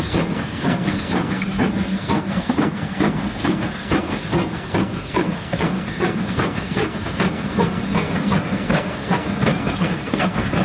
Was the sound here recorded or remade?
remade